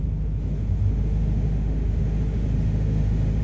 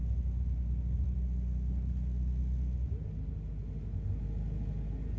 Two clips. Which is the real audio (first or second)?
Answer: second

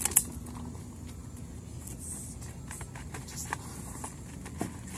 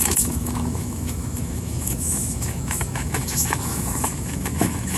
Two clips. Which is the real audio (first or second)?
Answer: first